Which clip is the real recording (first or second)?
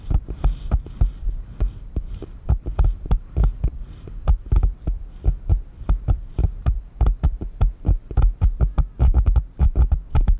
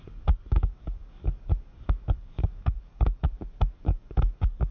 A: first